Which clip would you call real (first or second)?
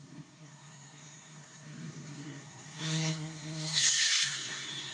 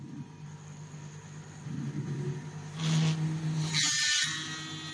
second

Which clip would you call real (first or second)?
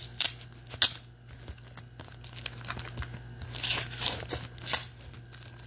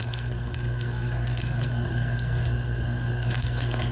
first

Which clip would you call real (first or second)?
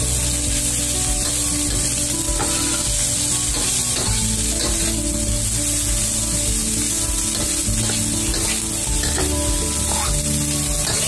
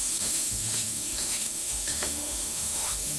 first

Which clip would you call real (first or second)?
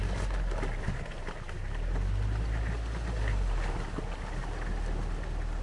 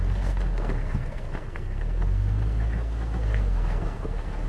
first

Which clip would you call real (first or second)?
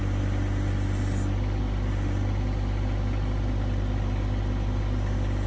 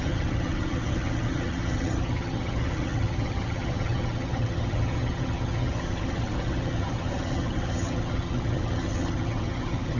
first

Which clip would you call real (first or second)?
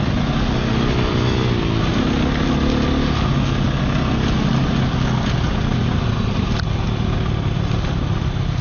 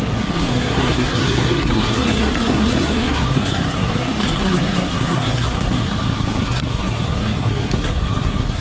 first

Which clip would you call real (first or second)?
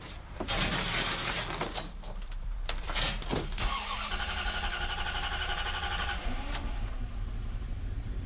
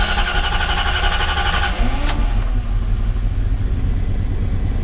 second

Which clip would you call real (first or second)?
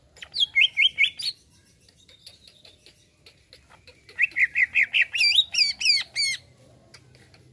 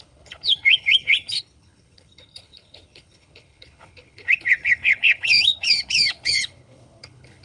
first